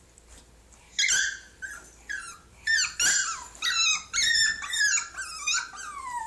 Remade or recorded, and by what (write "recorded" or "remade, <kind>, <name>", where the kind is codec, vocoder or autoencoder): recorded